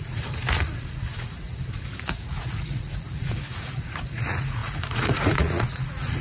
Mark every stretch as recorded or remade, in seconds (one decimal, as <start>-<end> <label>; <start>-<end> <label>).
0.0-6.2 remade